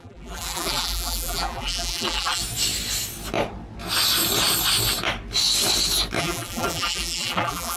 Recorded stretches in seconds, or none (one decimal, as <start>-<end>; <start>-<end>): 2.4-6.2